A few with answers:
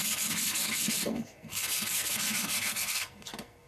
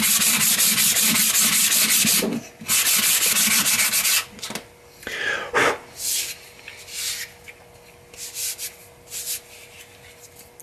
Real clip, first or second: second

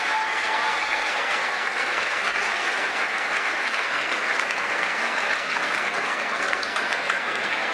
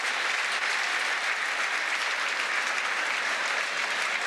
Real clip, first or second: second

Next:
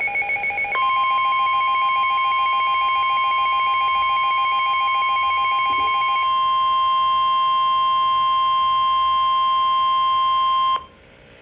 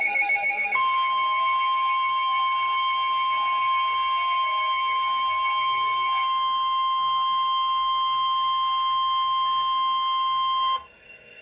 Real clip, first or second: first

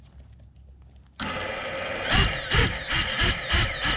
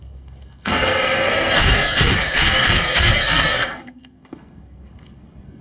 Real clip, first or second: first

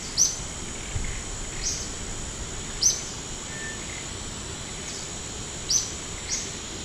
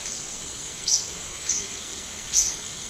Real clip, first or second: first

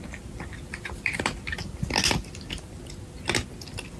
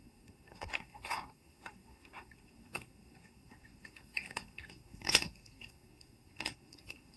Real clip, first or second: first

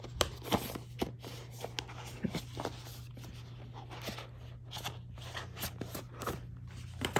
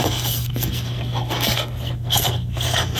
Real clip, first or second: first